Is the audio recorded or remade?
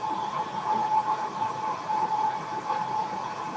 remade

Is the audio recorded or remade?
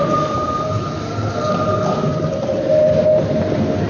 recorded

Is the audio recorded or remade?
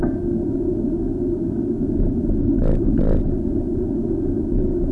recorded